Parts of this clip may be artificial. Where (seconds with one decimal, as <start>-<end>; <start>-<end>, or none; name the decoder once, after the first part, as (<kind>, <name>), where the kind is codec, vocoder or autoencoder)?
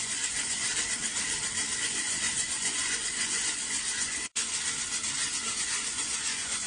0.0-0.7 (vocoder, Vocos); 1.8-4.5; 5.5-6.7